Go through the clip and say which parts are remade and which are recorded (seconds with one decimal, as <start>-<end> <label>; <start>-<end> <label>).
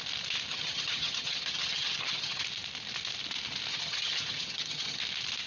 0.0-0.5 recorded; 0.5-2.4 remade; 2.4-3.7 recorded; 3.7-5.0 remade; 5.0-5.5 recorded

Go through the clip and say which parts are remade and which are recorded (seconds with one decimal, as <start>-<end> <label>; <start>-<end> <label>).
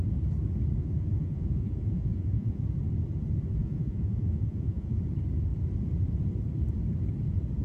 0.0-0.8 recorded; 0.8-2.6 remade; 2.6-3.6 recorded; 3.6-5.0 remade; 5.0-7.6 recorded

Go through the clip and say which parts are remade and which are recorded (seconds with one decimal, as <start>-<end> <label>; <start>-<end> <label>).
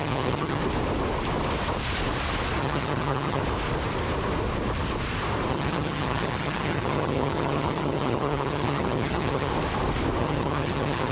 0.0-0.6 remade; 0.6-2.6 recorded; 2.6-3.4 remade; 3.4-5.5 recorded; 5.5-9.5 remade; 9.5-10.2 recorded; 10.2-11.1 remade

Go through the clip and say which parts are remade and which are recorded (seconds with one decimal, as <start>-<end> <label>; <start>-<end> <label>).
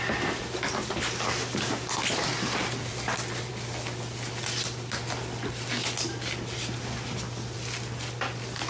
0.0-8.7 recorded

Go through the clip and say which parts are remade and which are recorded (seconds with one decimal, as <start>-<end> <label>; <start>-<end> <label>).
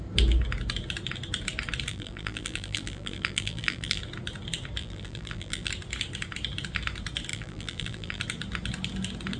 0.0-1.9 recorded; 1.9-4.0 remade; 4.0-4.8 recorded; 4.8-5.7 remade; 5.7-7.3 recorded; 7.3-8.2 remade; 8.2-9.4 recorded